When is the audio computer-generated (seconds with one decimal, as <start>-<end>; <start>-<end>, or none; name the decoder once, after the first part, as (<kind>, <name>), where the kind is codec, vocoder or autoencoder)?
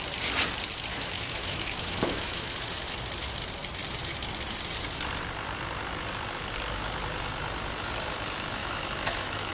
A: 0.9-2.5 (autoencoder, DAC-VAE); 8.6-9.5